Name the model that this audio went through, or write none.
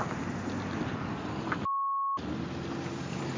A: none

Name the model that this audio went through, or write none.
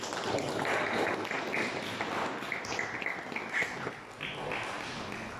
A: none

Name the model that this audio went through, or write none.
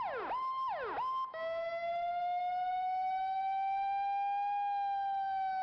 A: none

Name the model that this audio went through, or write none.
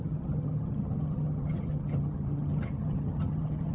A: vocoder, HiFi-GAN